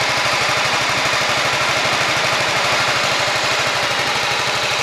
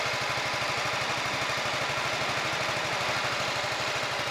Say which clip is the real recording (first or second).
second